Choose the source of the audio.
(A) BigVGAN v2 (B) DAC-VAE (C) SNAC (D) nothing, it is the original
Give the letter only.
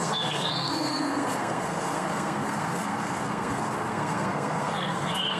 C